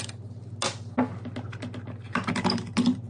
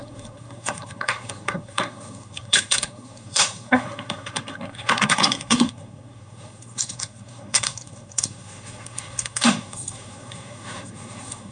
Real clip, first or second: first